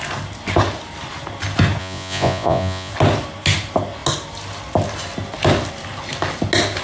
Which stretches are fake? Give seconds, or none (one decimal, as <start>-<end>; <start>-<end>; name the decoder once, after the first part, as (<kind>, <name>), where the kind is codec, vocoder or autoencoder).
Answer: 1.8-2.9 (vocoder, Vocos)